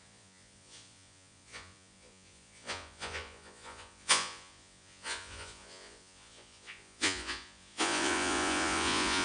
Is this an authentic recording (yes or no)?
no